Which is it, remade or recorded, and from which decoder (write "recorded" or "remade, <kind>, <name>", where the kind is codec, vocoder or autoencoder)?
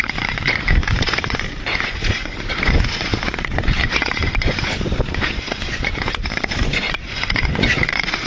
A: remade, vocoder, Vocos